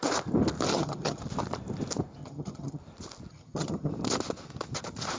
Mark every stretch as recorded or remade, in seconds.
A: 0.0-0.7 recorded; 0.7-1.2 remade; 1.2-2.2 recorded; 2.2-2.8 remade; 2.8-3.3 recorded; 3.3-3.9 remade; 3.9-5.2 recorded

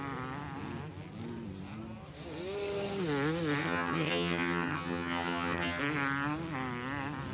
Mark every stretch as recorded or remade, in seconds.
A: 0.0-3.6 recorded; 3.6-5.8 remade; 5.8-7.3 recorded

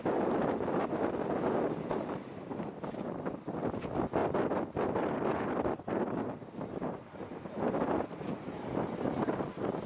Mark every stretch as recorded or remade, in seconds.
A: 0.0-9.9 recorded